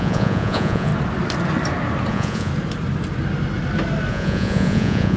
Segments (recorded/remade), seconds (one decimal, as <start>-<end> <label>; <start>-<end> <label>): 0.0-0.9 remade; 0.9-2.1 recorded; 2.1-2.5 remade; 2.5-4.1 recorded; 4.1-5.2 remade